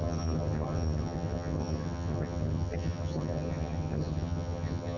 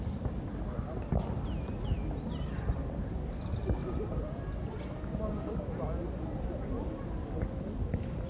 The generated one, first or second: first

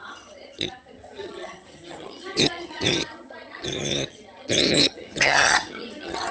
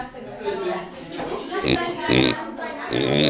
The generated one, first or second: first